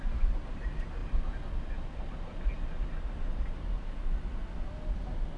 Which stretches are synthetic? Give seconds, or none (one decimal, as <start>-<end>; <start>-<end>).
none